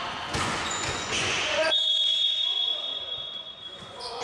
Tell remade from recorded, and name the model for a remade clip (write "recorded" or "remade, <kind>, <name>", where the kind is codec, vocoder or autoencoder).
remade, vocoder, Vocos